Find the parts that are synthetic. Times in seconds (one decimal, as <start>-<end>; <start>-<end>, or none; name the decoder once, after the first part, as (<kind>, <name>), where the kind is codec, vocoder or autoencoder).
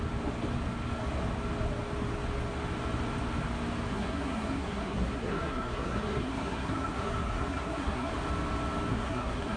3.9-8.1 (codec, SNAC); 8.9-9.6